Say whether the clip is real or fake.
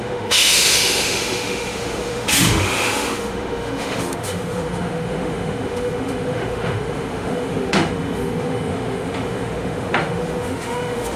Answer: fake